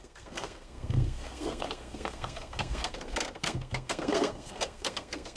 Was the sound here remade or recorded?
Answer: remade